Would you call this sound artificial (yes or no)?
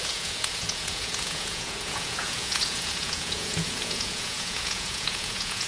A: yes